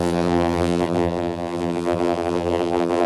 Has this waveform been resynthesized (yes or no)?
yes